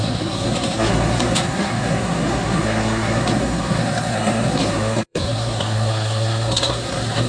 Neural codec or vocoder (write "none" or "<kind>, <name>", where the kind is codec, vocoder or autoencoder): codec, SNAC